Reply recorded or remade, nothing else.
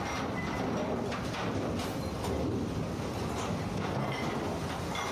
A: recorded